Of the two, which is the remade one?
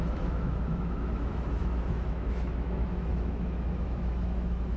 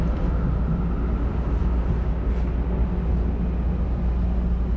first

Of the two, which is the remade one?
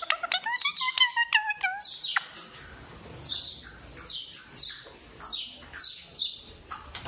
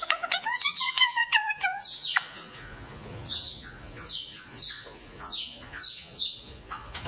second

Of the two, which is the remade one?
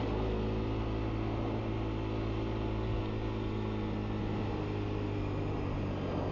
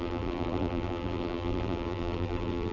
second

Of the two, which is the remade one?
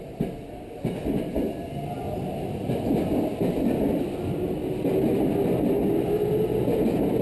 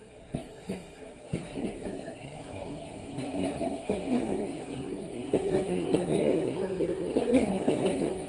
second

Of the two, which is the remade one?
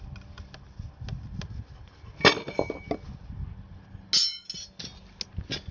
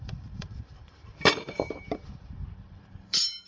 second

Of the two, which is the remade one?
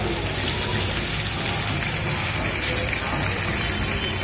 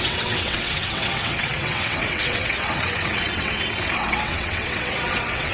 second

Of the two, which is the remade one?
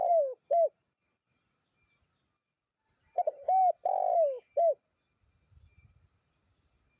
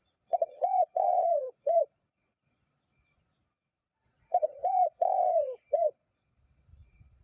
second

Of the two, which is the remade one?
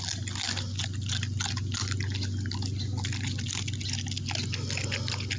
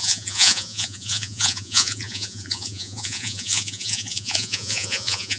second